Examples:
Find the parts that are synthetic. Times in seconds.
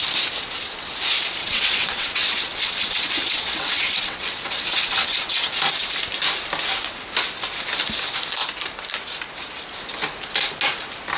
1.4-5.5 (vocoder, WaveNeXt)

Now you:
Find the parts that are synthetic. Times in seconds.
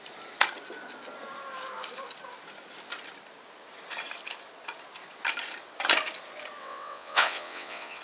6.6-8.0 (vocoder, WaveNeXt)